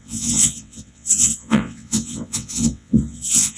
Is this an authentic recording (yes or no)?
no